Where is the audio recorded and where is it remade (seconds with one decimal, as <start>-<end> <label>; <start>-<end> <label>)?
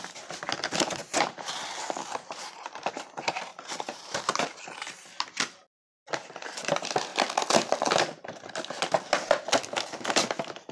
0.0-1.0 recorded; 1.0-1.5 remade; 1.5-3.5 recorded; 3.5-4.6 remade; 4.6-10.7 recorded